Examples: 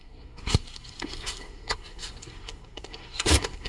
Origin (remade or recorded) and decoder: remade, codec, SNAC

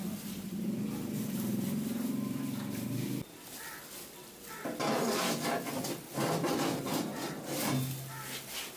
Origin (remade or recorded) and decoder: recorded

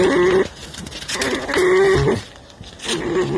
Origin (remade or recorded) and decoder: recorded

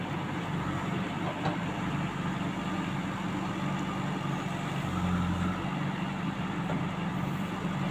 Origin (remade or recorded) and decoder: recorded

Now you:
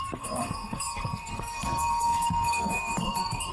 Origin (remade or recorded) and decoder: remade, codec, SNAC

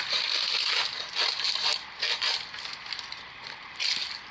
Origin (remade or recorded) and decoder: recorded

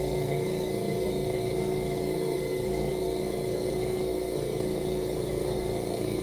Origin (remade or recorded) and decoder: remade, codec, SNAC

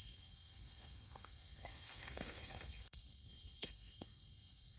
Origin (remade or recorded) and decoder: remade, codec, SNAC